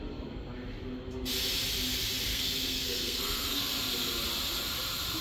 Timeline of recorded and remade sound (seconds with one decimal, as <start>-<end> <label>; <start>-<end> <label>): 0.0-2.3 recorded; 2.3-3.7 remade; 3.7-5.2 recorded